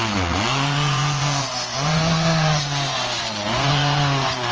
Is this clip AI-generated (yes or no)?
yes